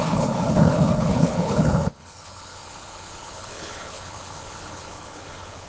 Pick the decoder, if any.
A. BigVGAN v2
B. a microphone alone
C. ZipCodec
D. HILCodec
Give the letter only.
D